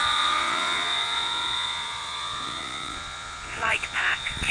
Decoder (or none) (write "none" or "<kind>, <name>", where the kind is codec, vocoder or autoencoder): vocoder, Vocos